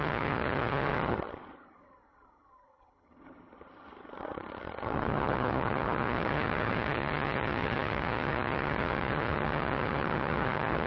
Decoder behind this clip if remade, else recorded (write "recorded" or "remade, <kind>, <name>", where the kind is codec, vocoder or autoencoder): remade, vocoder, HiFi-GAN